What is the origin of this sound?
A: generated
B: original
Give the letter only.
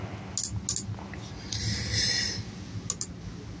B